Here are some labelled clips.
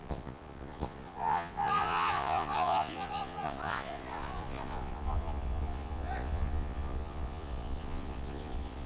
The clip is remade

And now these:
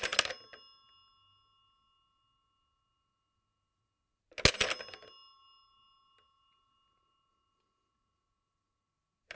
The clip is recorded